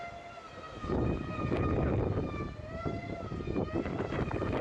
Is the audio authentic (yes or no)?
no